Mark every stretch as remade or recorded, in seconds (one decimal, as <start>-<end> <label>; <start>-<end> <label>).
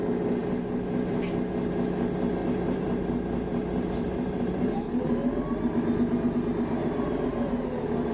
0.0-0.4 recorded; 0.4-1.5 remade; 1.5-2.4 recorded; 2.4-4.7 remade; 4.7-6.8 recorded; 6.8-7.5 remade; 7.5-8.1 recorded